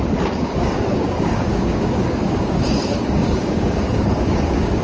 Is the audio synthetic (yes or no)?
yes